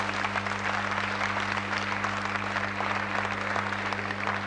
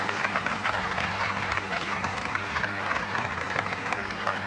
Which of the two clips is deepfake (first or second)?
second